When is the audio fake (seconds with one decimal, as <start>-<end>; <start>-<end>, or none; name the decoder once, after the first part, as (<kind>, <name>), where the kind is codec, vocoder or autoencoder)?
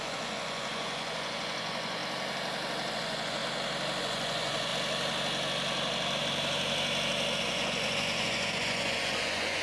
0.0-2.0 (vocoder, Vocos); 2.9-3.4; 4.0-4.7; 7.4-9.6